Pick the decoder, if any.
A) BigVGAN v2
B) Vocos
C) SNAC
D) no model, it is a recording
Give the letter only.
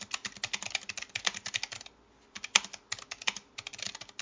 D